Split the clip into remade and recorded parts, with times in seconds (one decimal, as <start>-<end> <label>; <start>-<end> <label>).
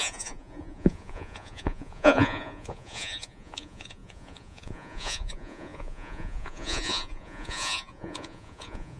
0.0-9.0 remade